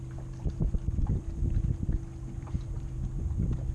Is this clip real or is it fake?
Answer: real